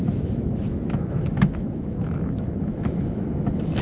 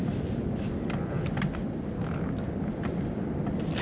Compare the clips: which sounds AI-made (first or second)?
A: first